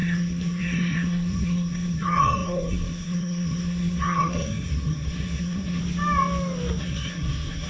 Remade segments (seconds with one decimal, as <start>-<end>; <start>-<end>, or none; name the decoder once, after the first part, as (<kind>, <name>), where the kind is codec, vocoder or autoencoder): 0.0-5.8 (codec, SNAC); 6.8-7.7